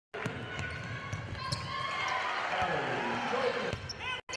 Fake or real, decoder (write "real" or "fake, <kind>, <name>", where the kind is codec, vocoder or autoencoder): real